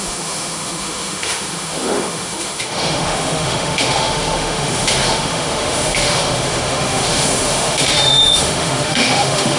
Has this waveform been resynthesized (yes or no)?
yes